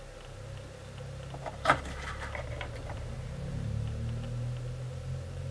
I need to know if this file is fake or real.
real